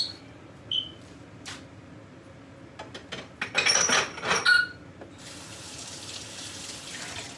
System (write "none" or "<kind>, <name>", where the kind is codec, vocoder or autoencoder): none